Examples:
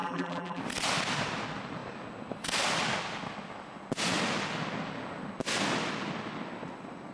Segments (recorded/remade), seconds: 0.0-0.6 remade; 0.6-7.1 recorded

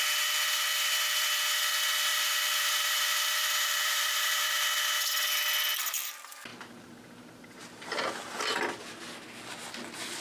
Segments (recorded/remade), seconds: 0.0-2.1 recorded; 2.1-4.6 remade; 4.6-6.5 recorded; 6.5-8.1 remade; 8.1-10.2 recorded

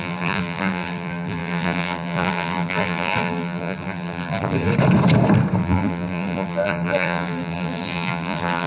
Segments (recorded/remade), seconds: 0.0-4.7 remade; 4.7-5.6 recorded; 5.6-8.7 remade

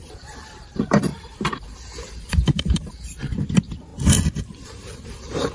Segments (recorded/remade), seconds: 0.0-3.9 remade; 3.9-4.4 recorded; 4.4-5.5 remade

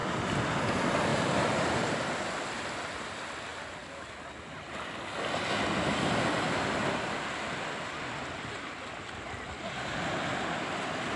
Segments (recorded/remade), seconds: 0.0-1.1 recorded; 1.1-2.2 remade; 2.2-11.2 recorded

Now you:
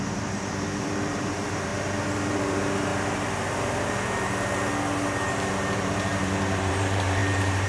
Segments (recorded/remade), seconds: 0.0-1.7 remade; 1.7-2.3 recorded; 2.3-2.9 remade; 2.9-5.3 recorded; 5.3-7.7 remade